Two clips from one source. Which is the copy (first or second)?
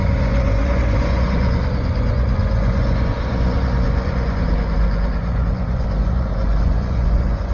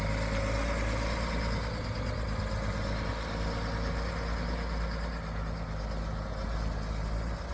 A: first